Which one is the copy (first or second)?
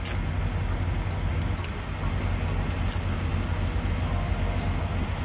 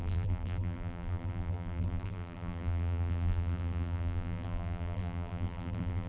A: second